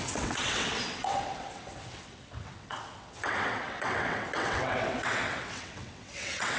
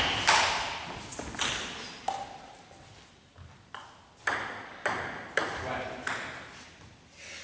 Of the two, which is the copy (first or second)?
first